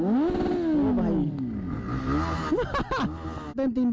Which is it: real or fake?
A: real